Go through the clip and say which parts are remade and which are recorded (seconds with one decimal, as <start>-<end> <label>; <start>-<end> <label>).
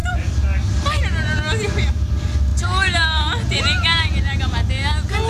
0.0-5.3 recorded